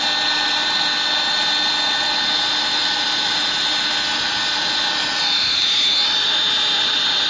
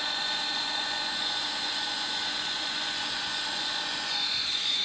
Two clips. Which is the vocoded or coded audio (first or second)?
second